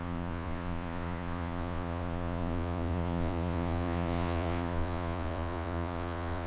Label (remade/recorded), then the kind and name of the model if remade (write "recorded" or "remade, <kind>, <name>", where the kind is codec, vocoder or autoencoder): remade, vocoder, Vocos